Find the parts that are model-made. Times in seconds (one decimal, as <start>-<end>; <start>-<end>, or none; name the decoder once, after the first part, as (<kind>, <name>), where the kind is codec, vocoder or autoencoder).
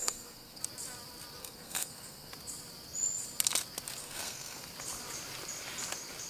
0.0-0.6 (codec, SNAC); 1.4-2.3; 4.0-4.7